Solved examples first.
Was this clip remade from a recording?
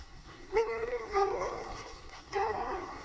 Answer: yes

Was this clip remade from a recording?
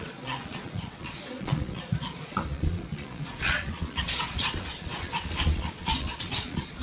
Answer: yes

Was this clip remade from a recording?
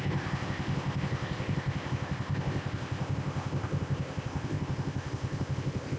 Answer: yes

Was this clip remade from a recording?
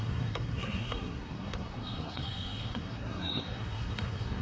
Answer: yes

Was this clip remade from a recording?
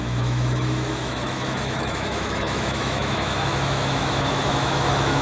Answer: yes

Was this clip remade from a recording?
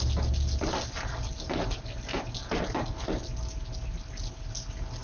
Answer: no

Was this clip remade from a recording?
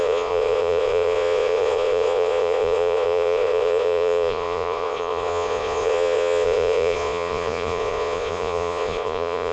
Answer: yes